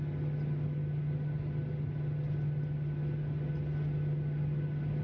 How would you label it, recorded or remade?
recorded